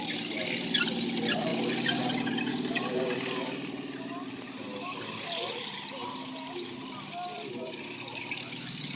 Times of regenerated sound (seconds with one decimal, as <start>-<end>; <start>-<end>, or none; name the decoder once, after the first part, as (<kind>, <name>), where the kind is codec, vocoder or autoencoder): 0.0-1.5 (vocoder, BigVGAN v2); 2.5-9.0